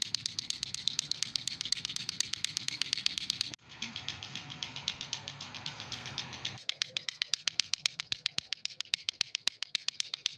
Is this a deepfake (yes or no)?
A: yes